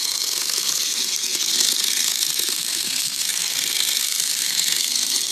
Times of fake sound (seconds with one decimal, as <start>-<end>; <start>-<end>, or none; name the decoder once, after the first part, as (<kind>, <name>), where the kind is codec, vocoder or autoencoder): 0.0-5.3 (codec, SNAC)